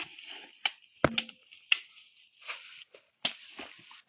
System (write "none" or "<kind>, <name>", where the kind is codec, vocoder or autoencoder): none